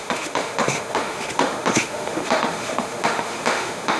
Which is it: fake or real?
fake